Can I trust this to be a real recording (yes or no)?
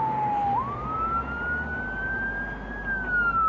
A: yes